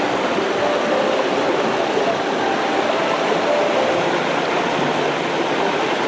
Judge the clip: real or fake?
real